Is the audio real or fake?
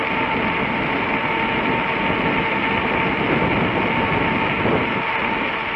real